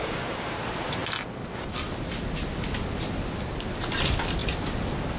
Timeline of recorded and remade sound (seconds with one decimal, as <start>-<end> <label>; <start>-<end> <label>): 0.0-0.5 remade; 0.5-5.2 recorded